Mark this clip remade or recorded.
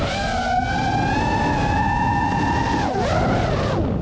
recorded